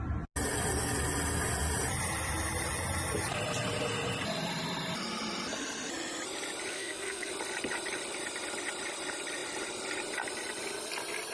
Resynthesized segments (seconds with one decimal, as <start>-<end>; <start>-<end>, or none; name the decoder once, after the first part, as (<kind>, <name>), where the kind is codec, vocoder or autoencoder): 6.7-7.3 (codec, SNAC)